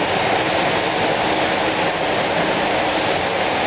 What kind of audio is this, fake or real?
real